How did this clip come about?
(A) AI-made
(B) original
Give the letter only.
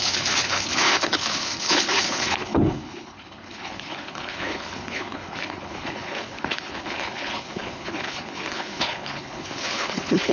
A